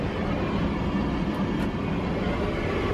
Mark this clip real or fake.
real